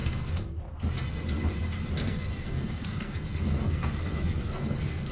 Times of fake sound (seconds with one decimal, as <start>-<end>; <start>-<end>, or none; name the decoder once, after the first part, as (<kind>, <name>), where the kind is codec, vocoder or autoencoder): 0.0-0.6 (codec, SNAC); 2.0-5.1